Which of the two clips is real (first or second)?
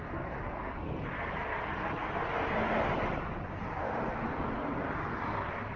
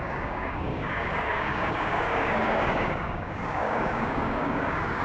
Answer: first